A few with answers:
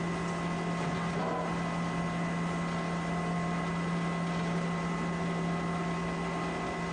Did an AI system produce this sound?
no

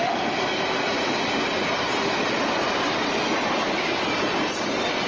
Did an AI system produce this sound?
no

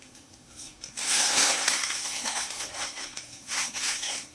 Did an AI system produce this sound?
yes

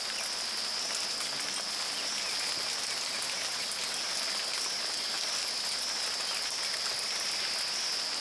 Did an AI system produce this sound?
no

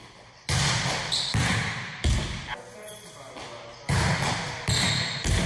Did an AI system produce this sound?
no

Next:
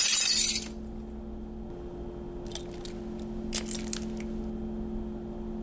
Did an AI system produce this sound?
no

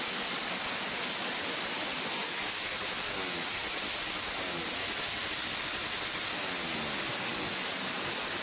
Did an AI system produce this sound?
no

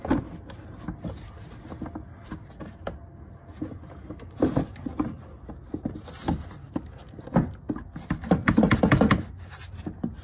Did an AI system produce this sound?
no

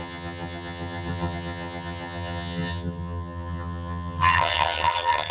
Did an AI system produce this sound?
yes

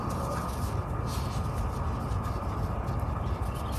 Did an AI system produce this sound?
no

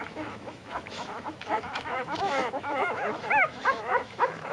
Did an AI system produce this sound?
yes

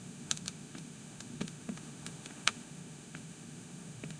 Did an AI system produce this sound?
yes